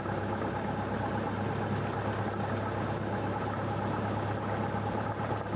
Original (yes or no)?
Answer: yes